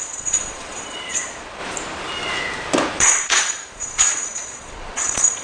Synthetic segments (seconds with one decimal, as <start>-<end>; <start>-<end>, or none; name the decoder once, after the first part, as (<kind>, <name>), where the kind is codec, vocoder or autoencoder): 0.0-1.6 (vocoder, Vocos); 3.0-5.4